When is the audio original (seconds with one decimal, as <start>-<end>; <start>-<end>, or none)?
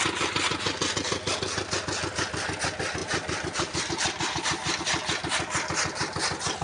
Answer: 0.0-3.0; 4.8-6.6